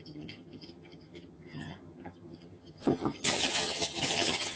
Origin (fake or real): fake